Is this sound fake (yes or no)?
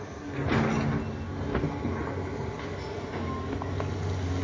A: no